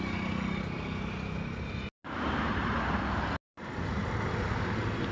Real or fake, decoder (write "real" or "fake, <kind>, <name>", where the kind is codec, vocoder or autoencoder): real